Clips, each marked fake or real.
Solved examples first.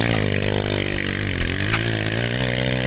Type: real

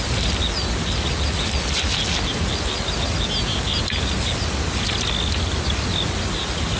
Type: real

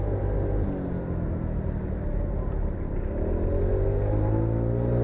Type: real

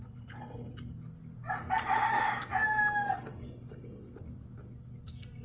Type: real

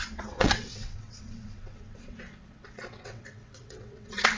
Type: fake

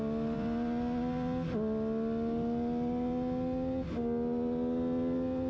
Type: real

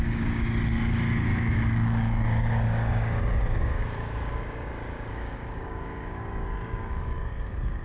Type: fake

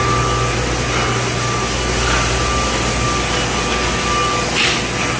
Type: real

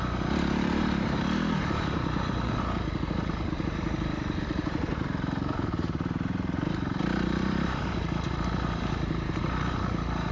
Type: fake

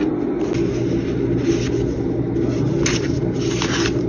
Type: real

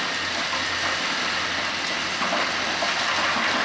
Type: real